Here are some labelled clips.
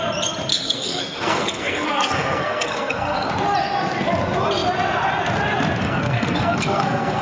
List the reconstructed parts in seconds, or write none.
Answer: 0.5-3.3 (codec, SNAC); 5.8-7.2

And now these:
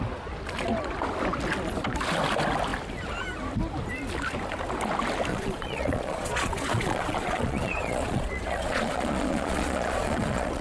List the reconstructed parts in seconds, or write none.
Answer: 5.3-10.6 (vocoder, Vocos)

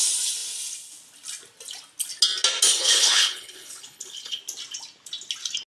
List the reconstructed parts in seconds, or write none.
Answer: 2.7-4.4 (codec, HILCodec)

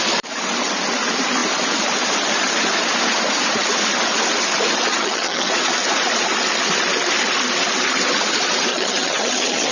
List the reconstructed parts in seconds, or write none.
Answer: 4.9-5.5 (vocoder, HiFi-GAN); 8.7-9.7

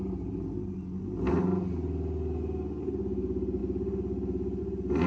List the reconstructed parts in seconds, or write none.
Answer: none

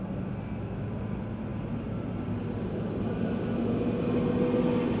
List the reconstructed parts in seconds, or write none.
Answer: none

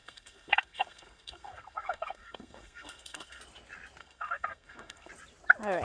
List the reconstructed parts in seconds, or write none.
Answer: 0.0-3.4 (codec, SNAC); 4.0-5.1

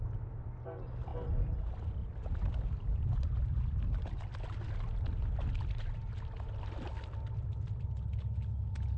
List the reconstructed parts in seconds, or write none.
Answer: none